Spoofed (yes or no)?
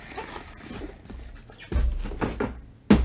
no